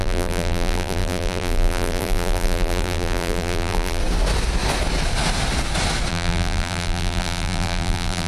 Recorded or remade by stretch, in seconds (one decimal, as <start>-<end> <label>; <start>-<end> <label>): 0.0-4.0 remade; 4.0-6.1 recorded; 6.1-8.3 remade